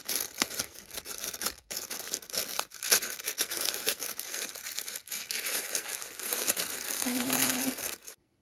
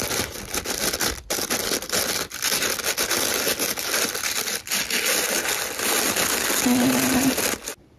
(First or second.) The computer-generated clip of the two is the first